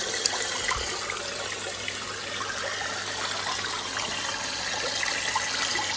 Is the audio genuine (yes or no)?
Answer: yes